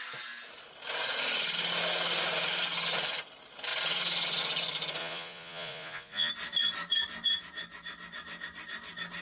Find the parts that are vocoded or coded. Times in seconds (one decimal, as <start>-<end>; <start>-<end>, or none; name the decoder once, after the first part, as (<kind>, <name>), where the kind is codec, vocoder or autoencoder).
5.0-6.3 (vocoder, Vocos)